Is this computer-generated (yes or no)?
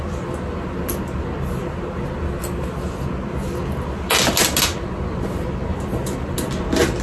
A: no